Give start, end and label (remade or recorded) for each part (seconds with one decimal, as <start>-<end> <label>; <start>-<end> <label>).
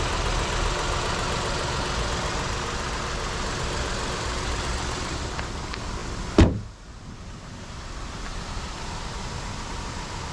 0.0-10.3 recorded